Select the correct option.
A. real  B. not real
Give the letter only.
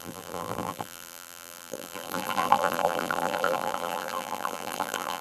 B